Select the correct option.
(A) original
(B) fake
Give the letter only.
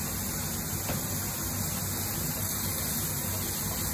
A